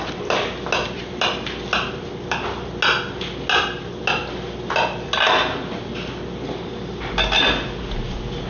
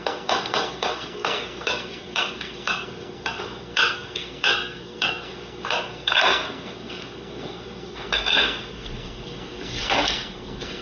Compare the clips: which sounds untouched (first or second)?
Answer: first